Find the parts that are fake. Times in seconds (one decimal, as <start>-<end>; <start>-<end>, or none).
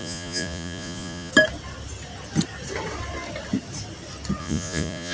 0.0-1.3; 4.4-5.1